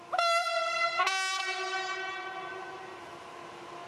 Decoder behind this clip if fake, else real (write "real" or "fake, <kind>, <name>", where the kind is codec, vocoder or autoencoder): real